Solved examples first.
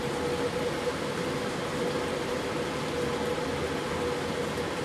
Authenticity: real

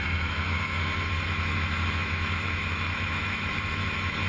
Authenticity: fake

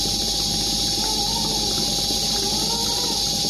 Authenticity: real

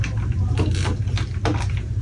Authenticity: real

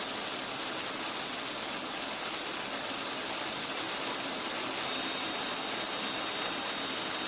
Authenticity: real